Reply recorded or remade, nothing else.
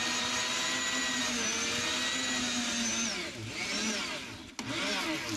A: recorded